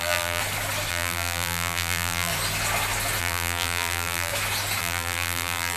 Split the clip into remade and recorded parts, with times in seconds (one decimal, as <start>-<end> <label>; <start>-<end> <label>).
0.0-0.4 remade; 0.4-0.9 recorded; 0.9-2.3 remade; 2.3-3.2 recorded; 3.2-4.3 remade; 4.3-4.8 recorded; 4.8-5.8 remade

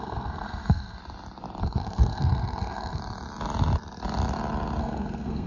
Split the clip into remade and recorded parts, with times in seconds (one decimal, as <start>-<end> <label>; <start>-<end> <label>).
0.0-1.0 remade; 1.0-1.6 recorded; 1.6-3.0 remade; 3.0-4.8 recorded; 4.8-5.5 remade

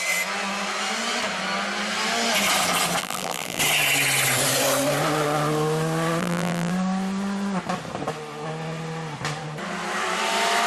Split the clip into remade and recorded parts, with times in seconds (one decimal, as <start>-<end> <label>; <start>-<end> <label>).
0.0-3.0 recorded; 3.0-3.6 remade; 3.6-6.2 recorded; 6.2-6.7 remade; 6.7-10.7 recorded

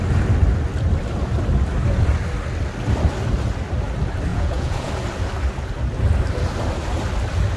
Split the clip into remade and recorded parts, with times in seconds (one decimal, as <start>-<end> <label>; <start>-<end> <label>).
0.0-4.3 recorded; 4.3-4.9 remade; 4.9-7.6 recorded